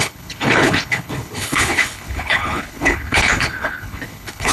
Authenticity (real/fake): fake